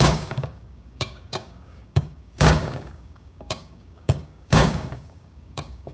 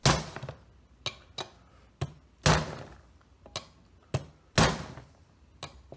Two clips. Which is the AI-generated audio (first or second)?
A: first